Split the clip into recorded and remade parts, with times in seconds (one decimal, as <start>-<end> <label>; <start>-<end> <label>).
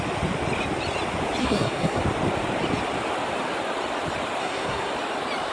0.0-1.4 recorded; 1.4-2.0 remade; 2.0-4.4 recorded; 4.4-4.9 remade; 4.9-5.5 recorded